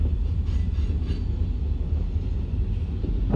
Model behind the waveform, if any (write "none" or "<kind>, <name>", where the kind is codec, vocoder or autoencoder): none